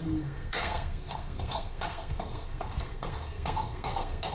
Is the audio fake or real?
fake